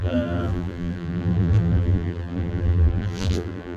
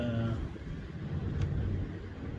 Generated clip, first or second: first